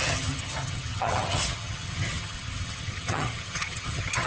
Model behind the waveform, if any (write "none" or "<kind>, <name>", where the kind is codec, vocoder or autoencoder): vocoder, HiFi-GAN